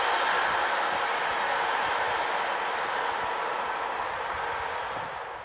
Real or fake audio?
real